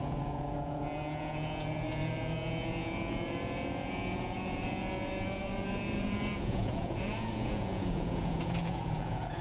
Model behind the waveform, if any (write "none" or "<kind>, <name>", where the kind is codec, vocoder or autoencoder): vocoder, Vocos